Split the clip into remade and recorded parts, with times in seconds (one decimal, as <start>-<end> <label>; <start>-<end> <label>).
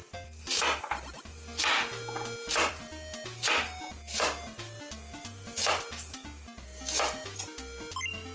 0.0-8.3 recorded